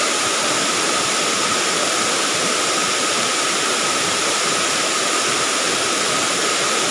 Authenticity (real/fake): real